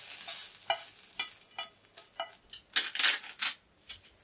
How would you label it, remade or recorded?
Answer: recorded